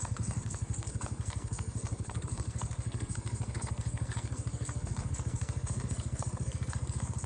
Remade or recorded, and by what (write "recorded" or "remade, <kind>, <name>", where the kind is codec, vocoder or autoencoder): remade, codec, SNAC